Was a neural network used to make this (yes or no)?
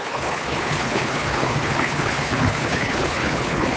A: yes